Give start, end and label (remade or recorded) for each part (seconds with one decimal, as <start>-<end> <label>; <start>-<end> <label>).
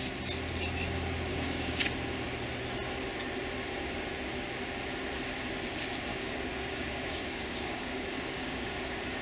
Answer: 0.0-1.3 recorded; 1.3-1.8 remade; 1.8-6.1 recorded; 6.1-8.7 remade; 8.7-9.2 recorded